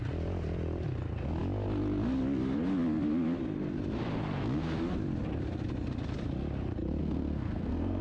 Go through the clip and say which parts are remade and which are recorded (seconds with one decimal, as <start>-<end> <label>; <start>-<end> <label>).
0.0-7.0 recorded; 7.0-8.0 remade